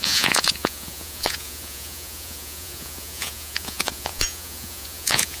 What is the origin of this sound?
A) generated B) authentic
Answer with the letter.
A